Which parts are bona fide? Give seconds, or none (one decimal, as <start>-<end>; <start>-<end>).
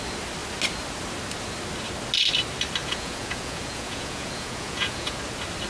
0.0-2.8; 5.2-5.7